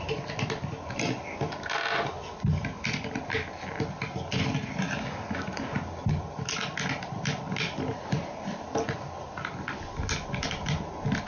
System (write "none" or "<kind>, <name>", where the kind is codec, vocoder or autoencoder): none